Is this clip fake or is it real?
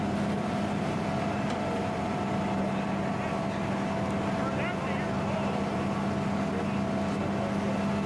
real